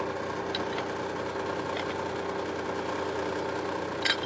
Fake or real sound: real